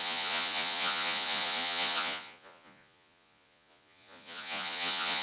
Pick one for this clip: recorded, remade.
remade